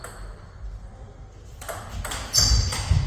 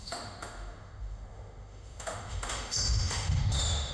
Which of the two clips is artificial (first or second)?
second